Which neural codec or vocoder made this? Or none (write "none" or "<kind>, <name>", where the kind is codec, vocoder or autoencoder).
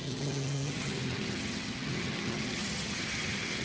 vocoder, HiFi-GAN